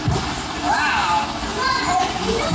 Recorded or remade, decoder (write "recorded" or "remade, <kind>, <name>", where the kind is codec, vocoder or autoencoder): recorded